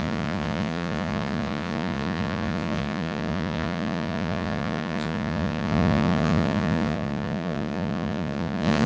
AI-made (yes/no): yes